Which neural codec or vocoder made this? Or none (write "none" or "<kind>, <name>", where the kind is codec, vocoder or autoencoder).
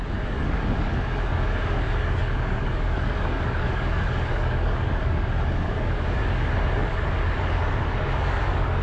codec, DAC